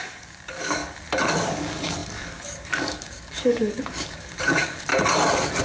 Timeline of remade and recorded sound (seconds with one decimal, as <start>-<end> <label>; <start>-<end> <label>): 0.0-0.8 remade; 0.8-1.4 recorded; 1.4-4.9 remade; 4.9-5.6 recorded